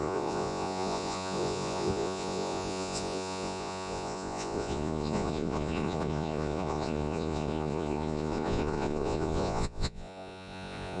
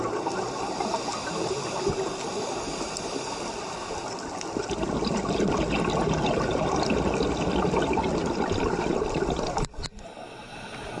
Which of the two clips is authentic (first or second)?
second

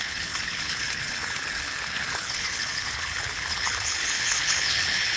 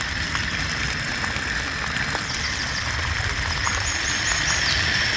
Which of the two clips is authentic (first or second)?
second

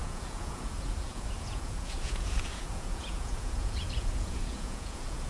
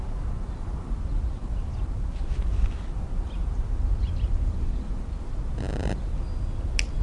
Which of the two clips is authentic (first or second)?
second